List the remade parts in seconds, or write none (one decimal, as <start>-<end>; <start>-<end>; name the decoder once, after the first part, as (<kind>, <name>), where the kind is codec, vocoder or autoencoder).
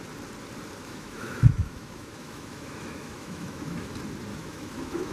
0.8-3.9 (autoencoder, DAC-VAE); 4.3-5.1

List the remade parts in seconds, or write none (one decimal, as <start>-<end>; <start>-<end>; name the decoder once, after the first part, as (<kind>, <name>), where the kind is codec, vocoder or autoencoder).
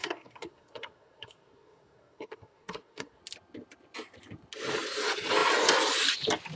0.0-3.2 (codec, SNAC)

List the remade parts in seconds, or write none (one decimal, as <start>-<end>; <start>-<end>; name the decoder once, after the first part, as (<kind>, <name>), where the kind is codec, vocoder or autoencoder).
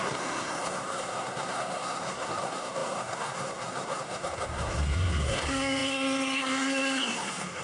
0.0-7.6 (codec, SNAC)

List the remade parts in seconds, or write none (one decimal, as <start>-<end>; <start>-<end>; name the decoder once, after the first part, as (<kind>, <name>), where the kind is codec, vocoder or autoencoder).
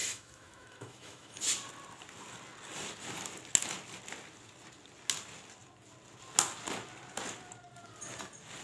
0.0-1.4 (autoencoder, DAC-VAE)